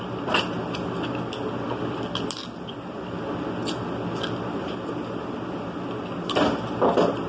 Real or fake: real